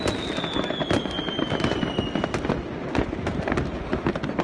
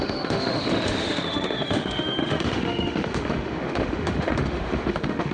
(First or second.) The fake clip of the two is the second